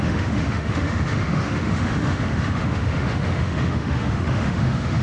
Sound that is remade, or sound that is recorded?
remade